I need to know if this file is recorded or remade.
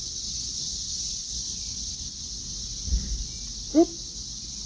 recorded